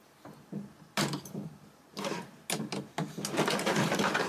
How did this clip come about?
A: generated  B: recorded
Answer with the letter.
B